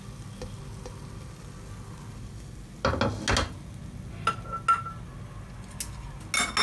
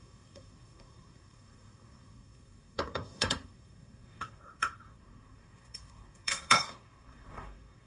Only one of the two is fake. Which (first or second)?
second